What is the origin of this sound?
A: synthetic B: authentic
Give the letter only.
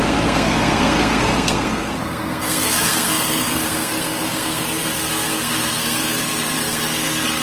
A